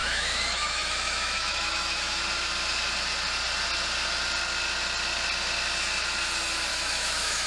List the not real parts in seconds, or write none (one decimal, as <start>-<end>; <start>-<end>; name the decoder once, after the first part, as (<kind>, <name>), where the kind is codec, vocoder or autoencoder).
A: 0.0-2.2 (autoencoder, DAC-VAE); 6.7-7.5